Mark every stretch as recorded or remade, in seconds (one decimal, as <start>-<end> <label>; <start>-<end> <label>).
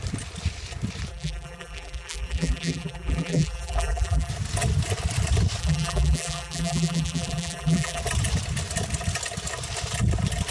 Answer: 0.0-1.1 recorded; 1.1-4.3 remade; 4.3-5.6 recorded; 5.6-8.0 remade; 8.0-10.5 recorded